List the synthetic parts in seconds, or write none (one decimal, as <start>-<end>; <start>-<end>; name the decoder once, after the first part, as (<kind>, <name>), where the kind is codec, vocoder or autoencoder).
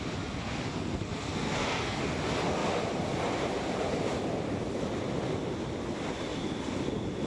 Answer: 0.7-2.0 (codec, SNAC)